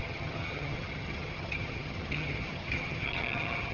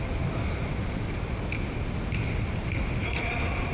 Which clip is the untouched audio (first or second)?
second